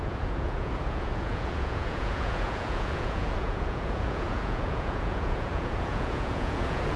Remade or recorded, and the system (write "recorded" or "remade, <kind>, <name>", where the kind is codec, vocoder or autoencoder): remade, vocoder, Vocos